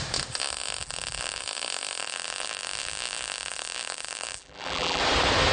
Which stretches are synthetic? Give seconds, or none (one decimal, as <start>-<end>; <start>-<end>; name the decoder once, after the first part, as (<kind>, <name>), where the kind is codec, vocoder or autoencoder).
0.8-1.4 (vocoder, BigVGAN v2); 2.0-5.0